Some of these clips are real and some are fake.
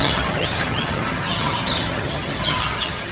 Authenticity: fake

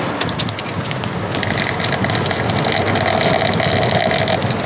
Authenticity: real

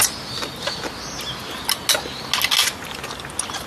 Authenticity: real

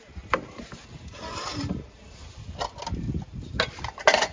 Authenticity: real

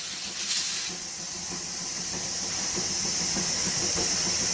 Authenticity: real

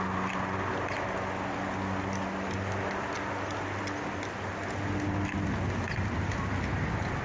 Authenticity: real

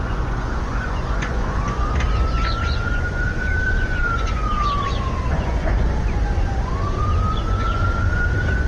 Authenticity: fake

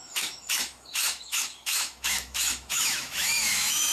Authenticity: fake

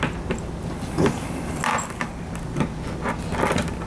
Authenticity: real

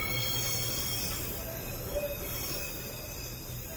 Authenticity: real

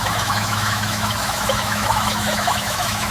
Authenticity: fake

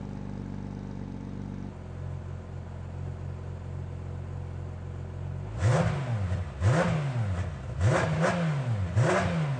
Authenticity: real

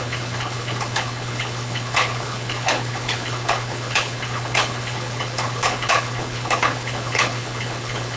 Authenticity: fake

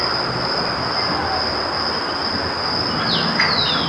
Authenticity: real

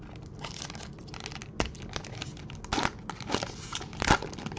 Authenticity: real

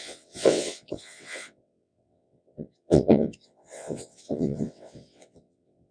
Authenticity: fake